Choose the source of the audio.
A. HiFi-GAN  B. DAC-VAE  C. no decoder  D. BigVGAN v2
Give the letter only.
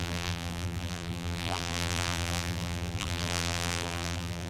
D